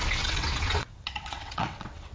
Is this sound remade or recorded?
remade